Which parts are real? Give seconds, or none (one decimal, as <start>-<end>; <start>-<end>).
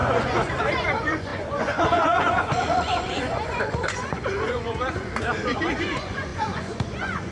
none